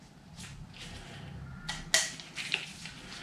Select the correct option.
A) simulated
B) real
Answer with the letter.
B